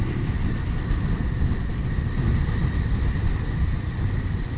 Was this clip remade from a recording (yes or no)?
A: yes